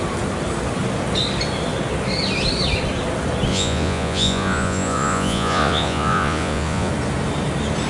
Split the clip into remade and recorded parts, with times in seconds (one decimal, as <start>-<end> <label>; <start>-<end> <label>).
0.0-3.5 recorded; 3.5-6.9 remade; 6.9-7.9 recorded